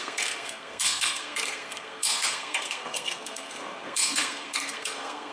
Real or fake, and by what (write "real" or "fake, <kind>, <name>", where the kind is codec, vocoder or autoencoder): fake, codec, SNAC